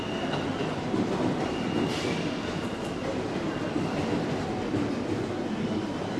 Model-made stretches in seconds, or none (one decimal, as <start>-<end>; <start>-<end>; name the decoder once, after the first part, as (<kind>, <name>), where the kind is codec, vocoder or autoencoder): none